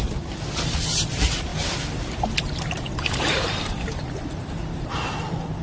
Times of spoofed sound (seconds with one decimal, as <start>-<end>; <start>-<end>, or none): 0.0-5.6